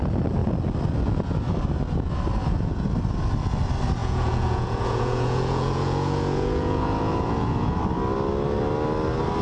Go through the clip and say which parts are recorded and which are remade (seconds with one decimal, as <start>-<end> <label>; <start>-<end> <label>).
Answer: 0.0-4.0 recorded; 4.0-7.8 remade; 7.8-9.4 recorded